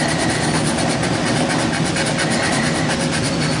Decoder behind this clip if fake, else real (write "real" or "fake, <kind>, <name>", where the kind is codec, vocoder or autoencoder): real